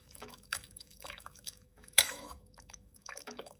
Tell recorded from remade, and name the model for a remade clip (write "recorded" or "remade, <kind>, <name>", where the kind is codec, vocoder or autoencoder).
remade, autoencoder, DAC-VAE